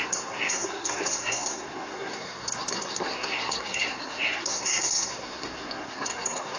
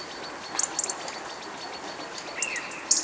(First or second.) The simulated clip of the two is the first